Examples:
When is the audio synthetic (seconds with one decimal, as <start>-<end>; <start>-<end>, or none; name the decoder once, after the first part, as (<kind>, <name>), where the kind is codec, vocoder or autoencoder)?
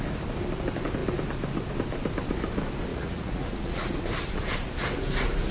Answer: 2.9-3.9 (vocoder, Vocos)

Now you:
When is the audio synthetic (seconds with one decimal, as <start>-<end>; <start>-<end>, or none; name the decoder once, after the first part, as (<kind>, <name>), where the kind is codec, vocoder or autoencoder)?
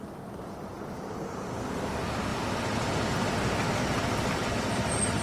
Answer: 0.7-1.9 (vocoder, BigVGAN v2)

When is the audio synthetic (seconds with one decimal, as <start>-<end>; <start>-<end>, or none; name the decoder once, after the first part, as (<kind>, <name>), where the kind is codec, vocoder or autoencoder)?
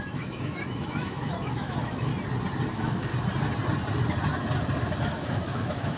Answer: 0.0-2.1 (autoencoder, DAC-VAE); 2.7-3.1; 5.0-6.0